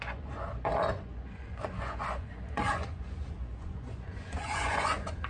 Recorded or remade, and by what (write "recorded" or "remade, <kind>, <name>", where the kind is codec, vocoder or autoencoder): remade, vocoder, Vocos